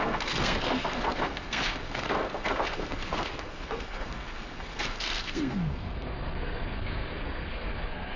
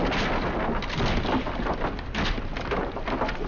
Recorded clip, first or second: second